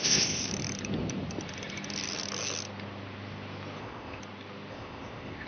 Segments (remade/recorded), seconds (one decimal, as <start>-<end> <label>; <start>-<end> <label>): 0.0-0.5 remade; 0.5-3.8 recorded; 3.8-4.2 remade; 4.2-4.7 recorded; 4.7-5.5 remade